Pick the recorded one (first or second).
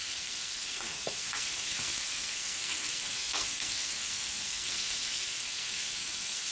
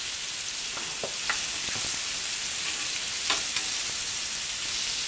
second